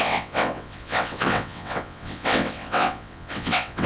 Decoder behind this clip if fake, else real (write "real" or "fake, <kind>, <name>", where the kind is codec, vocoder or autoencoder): fake, vocoder, WaveNeXt